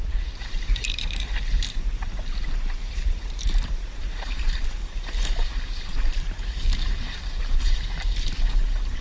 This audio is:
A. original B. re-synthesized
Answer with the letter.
B